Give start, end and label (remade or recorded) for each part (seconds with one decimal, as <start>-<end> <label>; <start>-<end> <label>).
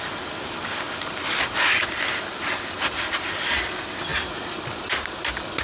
0.0-5.6 recorded